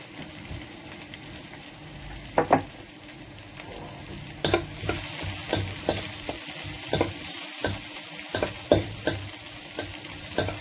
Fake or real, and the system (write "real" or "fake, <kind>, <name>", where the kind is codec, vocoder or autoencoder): real